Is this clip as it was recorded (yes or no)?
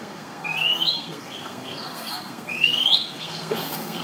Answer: no